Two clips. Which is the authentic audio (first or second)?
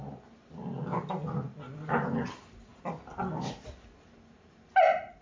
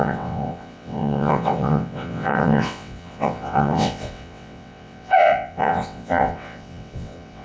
first